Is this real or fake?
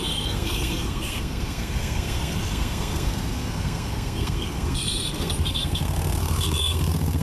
fake